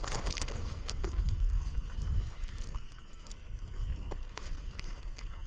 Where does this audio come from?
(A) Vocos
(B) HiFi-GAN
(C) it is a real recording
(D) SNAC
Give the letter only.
D